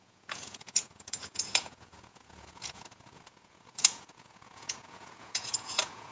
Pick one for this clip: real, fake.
fake